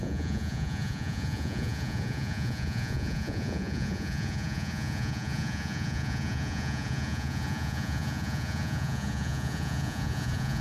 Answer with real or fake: fake